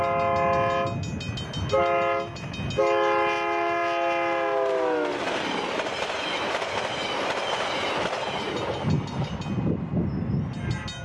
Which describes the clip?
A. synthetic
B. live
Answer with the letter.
B